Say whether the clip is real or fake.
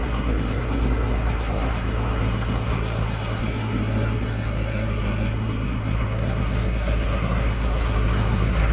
fake